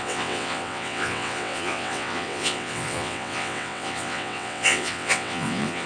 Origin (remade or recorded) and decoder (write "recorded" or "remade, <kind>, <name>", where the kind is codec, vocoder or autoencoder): remade, vocoder, WaveNeXt